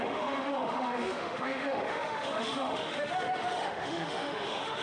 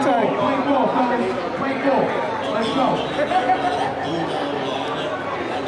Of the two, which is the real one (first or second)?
second